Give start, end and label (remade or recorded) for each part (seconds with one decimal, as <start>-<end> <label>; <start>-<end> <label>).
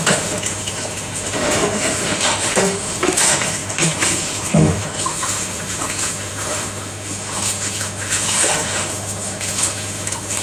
0.0-10.4 remade